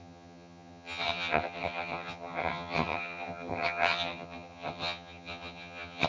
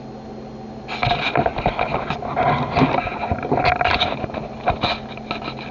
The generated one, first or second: first